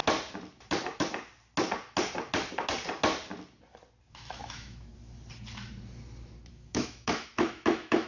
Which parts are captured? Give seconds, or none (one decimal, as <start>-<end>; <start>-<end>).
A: 0.0-4.1; 4.9-6.5